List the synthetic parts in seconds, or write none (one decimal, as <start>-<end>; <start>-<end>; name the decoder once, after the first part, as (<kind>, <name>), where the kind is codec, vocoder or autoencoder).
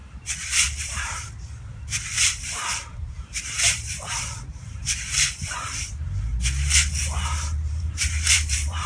0.8-6.3 (vocoder, BigVGAN v2); 7.7-8.9